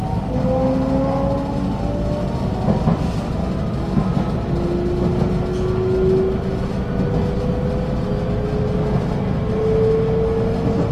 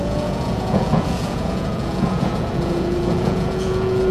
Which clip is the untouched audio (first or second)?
first